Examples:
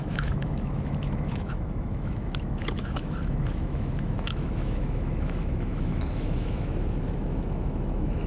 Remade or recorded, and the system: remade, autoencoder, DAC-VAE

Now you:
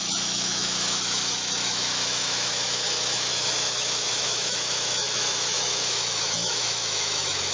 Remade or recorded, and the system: remade, autoencoder, DAC-VAE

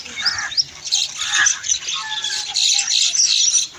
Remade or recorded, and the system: recorded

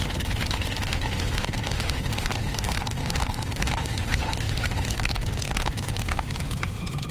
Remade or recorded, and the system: remade, autoencoder, DAC-VAE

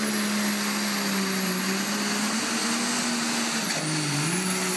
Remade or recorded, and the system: recorded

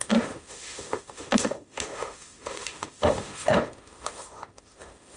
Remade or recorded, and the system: remade, autoencoder, DAC-VAE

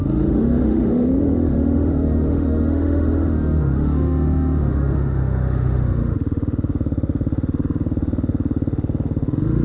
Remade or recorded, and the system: remade, autoencoder, DAC-VAE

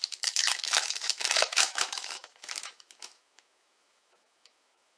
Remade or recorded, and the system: remade, autoencoder, DAC-VAE